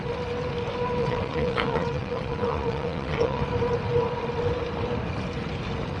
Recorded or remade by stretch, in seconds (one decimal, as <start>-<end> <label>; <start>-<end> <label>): 0.0-1.0 recorded; 1.0-3.4 remade; 3.4-6.0 recorded